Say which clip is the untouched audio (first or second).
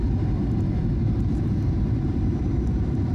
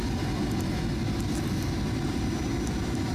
second